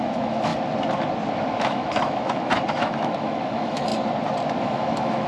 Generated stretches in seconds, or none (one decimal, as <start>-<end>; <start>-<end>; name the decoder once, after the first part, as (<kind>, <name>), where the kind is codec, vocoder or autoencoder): 0.0-0.5 (autoencoder, DAC-VAE); 1.6-3.9; 4.6-5.3

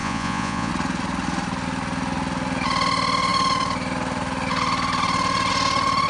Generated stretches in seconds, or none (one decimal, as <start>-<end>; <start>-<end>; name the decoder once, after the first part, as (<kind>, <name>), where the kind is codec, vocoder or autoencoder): 0.0-0.7 (vocoder, Vocos)

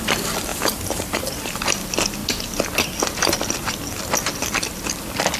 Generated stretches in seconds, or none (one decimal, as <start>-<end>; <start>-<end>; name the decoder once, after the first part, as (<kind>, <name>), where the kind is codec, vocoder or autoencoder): 0.5-1.7 (vocoder, BigVGAN v2)

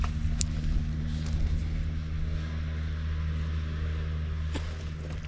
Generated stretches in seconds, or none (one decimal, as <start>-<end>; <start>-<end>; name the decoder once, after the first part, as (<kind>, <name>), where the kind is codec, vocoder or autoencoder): none

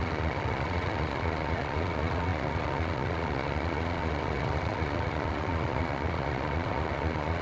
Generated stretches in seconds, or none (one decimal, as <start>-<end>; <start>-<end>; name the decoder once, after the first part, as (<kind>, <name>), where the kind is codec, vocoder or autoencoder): 0.0-7.4 (vocoder, Vocos)

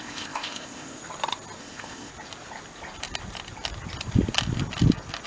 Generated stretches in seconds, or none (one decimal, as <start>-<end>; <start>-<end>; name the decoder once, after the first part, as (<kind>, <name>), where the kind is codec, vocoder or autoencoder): 0.0-1.0 (codec, ZipCodec); 1.6-2.1

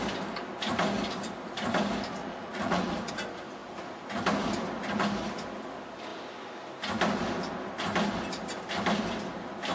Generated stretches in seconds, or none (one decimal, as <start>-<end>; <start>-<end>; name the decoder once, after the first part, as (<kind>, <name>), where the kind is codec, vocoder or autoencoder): 2.2-3.1 (vocoder, Vocos)

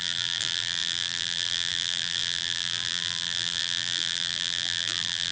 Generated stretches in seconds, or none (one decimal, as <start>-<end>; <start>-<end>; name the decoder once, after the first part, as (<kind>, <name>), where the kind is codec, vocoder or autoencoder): 0.0-5.3 (vocoder, BigVGAN v2)